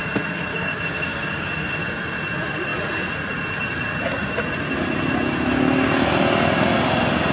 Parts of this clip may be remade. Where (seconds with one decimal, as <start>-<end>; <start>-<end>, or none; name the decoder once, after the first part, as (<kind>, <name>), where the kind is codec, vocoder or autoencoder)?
0.5-1.8 (codec, DAC)